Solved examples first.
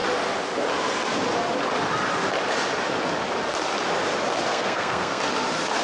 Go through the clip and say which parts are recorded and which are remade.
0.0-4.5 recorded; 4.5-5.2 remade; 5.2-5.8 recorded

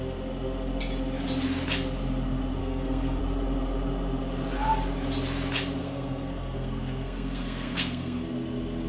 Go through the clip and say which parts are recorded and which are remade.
0.0-2.6 recorded; 2.6-3.2 remade; 3.2-5.8 recorded; 5.8-8.3 remade; 8.3-8.9 recorded

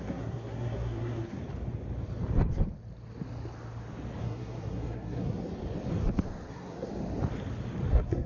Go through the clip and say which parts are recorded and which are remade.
0.0-1.4 remade; 1.4-4.2 recorded; 4.2-5.4 remade; 5.4-6.5 recorded; 6.5-6.9 remade; 6.9-7.9 recorded; 7.9-8.3 remade

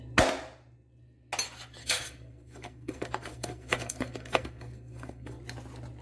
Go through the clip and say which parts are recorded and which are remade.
0.0-1.8 recorded; 1.8-5.4 remade; 5.4-6.0 recorded

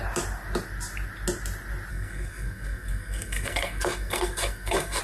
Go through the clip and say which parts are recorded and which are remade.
0.0-1.9 recorded; 1.9-5.0 remade

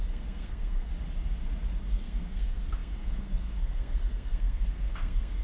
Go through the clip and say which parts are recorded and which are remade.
0.0-0.9 remade; 0.9-1.8 recorded; 1.8-5.4 remade

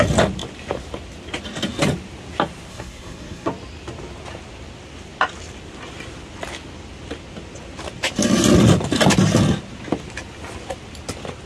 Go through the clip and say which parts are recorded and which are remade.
0.0-2.7 recorded; 2.7-3.5 remade; 3.5-11.5 recorded